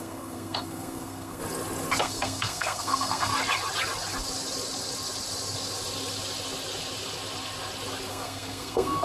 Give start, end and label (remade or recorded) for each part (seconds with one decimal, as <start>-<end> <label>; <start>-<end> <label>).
0.0-1.4 remade; 1.4-2.0 recorded; 2.0-3.3 remade; 3.3-8.1 recorded; 8.1-9.0 remade